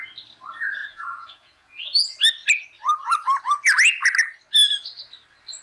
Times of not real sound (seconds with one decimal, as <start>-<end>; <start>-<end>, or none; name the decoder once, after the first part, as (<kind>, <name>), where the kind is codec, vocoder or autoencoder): 0.8-1.8 (vocoder, Vocos)